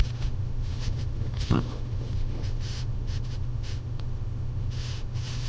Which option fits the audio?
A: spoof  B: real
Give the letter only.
A